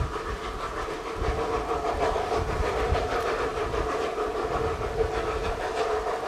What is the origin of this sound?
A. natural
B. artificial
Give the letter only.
A